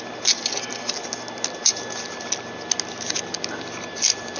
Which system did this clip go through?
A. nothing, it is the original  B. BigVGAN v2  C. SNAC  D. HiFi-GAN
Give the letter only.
A